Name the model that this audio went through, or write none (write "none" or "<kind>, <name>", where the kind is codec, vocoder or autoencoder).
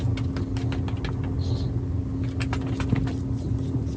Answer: none